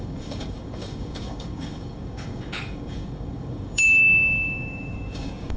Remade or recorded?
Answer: remade